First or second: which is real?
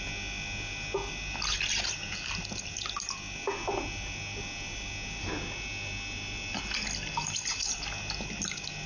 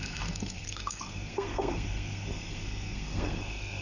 first